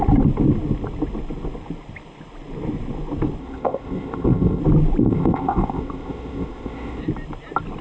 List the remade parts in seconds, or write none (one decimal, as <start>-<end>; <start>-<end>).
3.4-4.6; 5.0-7.0